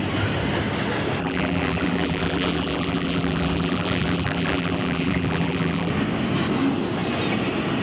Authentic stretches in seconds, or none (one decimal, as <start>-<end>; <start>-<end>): 0.0-1.2; 5.9-7.8